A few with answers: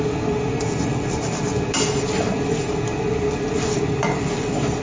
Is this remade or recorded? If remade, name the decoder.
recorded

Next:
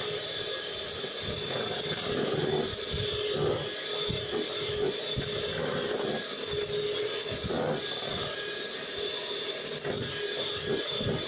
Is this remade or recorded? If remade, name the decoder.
recorded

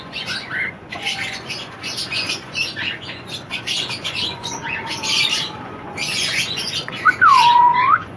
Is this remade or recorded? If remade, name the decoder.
remade, vocoder, Vocos